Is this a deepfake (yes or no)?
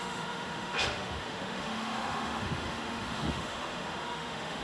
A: yes